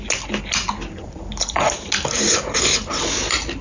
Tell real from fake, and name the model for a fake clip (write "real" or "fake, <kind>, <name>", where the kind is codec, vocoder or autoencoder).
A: real